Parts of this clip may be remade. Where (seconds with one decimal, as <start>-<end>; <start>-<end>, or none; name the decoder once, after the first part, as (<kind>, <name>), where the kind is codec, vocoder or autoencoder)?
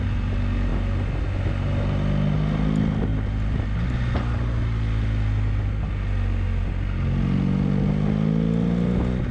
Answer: none